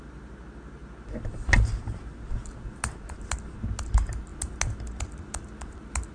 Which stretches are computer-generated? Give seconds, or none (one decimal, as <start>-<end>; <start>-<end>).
none